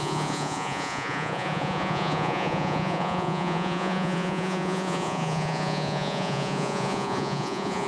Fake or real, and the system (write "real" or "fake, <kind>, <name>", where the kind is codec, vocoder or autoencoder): fake, vocoder, Vocos